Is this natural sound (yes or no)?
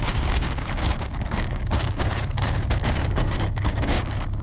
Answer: no